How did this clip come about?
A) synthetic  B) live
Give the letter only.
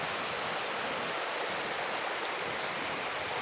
B